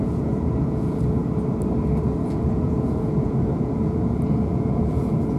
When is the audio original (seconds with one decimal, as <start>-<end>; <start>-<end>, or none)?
1.2-2.2